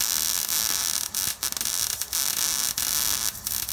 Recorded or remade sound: recorded